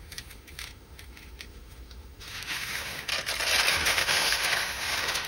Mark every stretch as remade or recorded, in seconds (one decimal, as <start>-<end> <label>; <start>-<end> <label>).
0.0-3.1 remade; 3.1-3.7 recorded; 3.7-5.3 remade